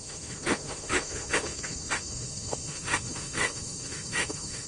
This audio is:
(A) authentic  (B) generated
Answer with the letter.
B